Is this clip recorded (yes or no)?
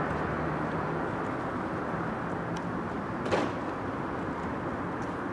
yes